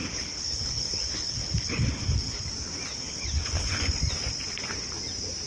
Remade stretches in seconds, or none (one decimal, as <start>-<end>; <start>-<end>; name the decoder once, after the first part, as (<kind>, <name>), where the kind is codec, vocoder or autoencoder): 0.0-2.5 (codec, HILCodec); 2.9-3.9

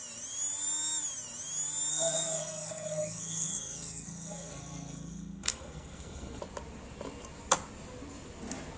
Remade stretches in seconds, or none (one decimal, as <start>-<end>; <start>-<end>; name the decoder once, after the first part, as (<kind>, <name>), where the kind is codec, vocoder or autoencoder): 1.9-6.4 (codec, SNAC)

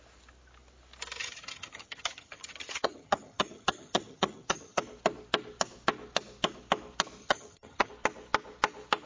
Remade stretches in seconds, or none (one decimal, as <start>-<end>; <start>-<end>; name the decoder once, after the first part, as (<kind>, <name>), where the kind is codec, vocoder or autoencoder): 1.2-4.8 (vocoder, HiFi-GAN); 7.2-7.9

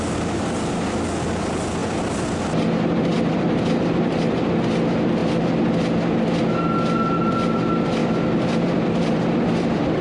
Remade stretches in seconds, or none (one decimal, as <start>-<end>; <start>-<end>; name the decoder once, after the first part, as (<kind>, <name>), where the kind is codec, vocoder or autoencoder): 1.8-4.2 (vocoder, BigVGAN v2); 8.0-10.0

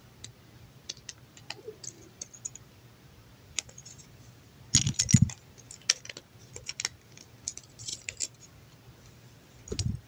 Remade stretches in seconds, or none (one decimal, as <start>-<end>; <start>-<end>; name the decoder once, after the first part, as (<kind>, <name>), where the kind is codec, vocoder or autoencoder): none

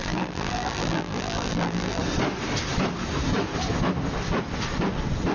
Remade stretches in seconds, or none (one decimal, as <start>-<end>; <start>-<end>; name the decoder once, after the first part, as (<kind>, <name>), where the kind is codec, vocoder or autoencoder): 0.0-2.0 (vocoder, BigVGAN v2)